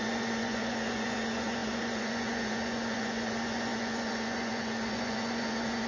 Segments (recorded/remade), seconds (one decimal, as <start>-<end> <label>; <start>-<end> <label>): 0.0-5.9 remade